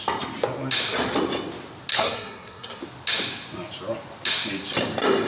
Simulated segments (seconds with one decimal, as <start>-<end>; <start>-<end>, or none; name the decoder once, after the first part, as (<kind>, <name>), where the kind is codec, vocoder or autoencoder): 1.9-2.8 (codec, SNAC)